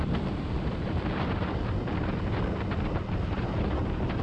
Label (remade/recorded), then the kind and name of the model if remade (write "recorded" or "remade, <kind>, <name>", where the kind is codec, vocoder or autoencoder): recorded